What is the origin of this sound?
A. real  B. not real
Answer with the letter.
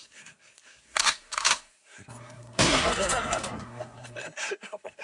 B